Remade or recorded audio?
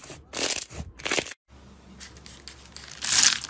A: recorded